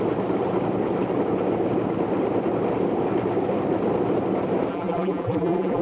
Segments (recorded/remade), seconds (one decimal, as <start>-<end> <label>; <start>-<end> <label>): 0.0-4.7 recorded; 4.7-5.8 remade